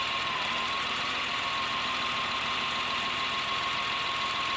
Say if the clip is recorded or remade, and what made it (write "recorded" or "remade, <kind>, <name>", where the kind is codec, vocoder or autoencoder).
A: remade, vocoder, BigVGAN v2